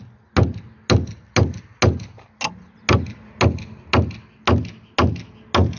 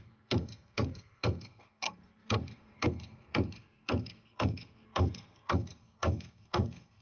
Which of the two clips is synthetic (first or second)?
second